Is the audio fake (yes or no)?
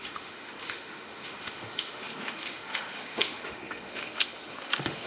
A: yes